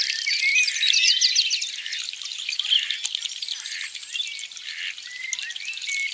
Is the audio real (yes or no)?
yes